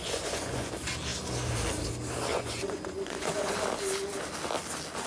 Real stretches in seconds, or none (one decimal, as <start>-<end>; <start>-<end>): 0.7-2.3; 3.5-5.1